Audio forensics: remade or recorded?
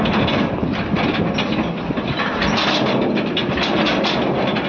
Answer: recorded